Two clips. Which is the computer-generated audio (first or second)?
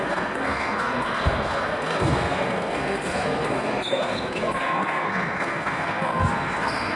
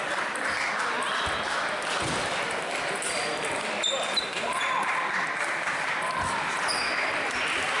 first